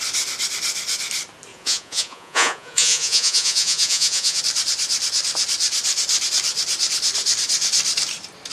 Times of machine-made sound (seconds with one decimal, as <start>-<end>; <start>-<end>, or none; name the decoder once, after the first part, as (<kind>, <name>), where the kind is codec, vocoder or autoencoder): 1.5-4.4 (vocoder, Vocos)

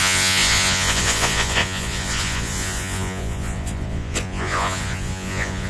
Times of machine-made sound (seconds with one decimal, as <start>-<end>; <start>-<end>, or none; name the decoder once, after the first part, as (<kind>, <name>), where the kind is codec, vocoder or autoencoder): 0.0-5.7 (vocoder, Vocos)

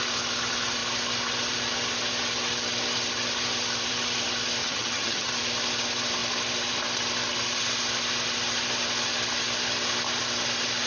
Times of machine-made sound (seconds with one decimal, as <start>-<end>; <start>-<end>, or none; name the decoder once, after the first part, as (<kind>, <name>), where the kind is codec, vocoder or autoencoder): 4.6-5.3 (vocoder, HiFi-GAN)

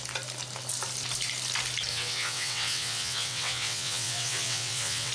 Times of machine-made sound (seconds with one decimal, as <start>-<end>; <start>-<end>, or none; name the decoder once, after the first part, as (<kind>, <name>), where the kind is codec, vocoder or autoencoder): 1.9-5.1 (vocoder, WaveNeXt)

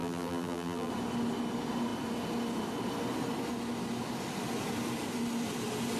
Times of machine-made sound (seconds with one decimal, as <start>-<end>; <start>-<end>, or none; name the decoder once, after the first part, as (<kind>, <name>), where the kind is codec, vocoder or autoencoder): 0.0-0.9 (vocoder, BigVGAN v2)